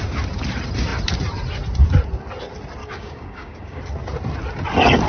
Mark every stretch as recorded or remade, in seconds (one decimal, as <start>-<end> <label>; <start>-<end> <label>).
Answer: 0.0-2.8 recorded; 2.8-3.8 remade; 3.8-5.1 recorded

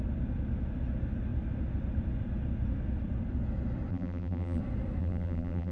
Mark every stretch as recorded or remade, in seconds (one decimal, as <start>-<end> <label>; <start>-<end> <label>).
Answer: 0.0-3.9 recorded; 3.9-4.6 remade; 4.6-5.0 recorded; 5.0-5.7 remade